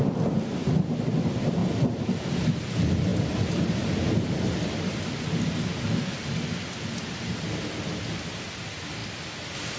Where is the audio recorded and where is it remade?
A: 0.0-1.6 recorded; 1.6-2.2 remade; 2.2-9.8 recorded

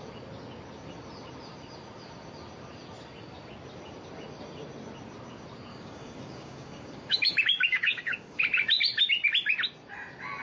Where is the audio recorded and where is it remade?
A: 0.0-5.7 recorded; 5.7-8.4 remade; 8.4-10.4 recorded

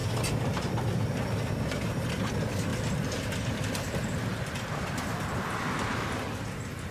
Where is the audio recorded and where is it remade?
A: 0.0-2.3 remade; 2.3-2.7 recorded; 2.7-5.6 remade; 5.6-6.9 recorded